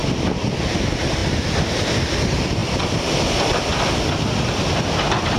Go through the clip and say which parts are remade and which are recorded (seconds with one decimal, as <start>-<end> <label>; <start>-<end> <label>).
0.0-5.4 recorded

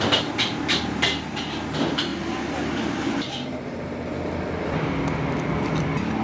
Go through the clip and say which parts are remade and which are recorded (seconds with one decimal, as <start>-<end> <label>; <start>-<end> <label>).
0.0-6.2 recorded

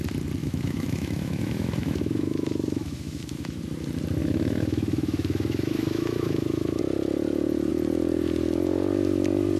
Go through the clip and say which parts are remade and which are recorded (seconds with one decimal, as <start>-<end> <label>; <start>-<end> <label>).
0.0-0.4 recorded; 0.4-3.6 remade; 3.6-4.2 recorded; 4.2-6.8 remade; 6.8-9.6 recorded

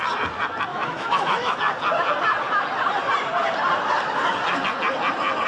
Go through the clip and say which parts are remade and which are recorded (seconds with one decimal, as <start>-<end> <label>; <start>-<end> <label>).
0.0-0.7 recorded; 0.7-1.6 remade; 1.6-5.5 recorded

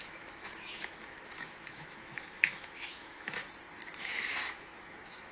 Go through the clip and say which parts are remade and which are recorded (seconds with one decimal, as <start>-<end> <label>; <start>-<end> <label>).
0.0-3.4 remade; 3.4-4.0 recorded; 4.0-5.3 remade

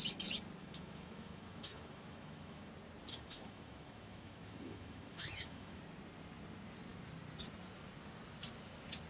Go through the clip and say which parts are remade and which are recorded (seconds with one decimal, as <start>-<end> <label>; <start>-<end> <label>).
0.0-0.6 recorded; 0.6-2.7 remade; 2.7-3.1 recorded; 3.1-5.8 remade; 5.8-9.1 recorded